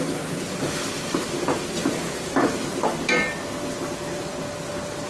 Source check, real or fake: real